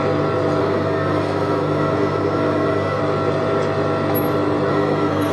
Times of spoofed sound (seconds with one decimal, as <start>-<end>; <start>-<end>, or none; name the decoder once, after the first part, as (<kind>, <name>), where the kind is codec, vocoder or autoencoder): 0.6-3.0 (codec, SNAC); 4.7-5.3